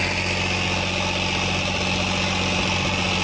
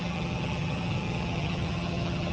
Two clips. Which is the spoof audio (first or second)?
second